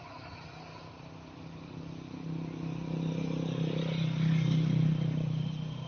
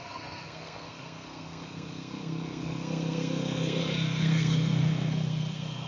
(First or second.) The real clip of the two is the first